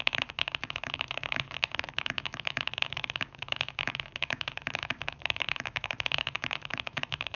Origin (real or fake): fake